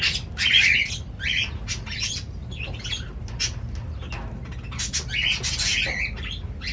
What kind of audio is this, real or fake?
real